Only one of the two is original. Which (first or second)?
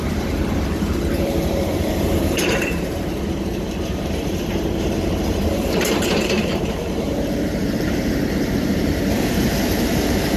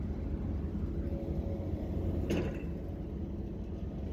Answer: second